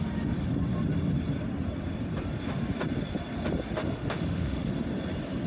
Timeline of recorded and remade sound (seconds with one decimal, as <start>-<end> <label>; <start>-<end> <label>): 0.0-3.8 recorded; 3.8-4.7 remade; 4.7-5.5 recorded